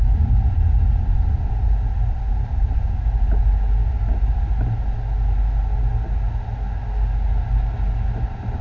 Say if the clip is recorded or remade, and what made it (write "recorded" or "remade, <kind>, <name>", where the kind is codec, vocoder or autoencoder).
recorded